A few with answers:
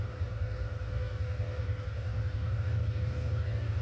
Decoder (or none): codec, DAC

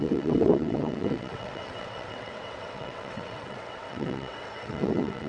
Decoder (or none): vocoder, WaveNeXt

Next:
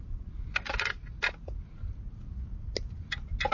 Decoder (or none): none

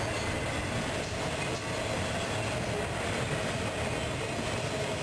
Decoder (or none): none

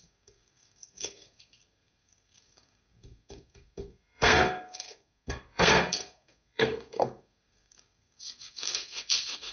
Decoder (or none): codec, SNAC